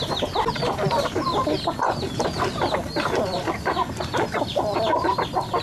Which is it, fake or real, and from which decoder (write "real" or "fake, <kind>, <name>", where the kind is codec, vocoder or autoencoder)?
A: real